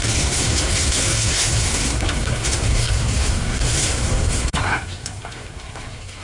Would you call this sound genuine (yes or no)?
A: no